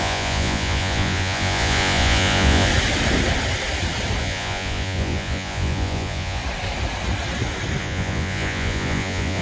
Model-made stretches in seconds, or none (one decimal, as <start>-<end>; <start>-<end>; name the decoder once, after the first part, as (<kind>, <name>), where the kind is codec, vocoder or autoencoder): 0.0-2.7 (vocoder, Vocos); 4.2-6.4; 7.8-9.4